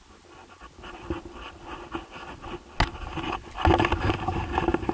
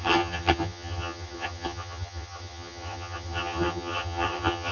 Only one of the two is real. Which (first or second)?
first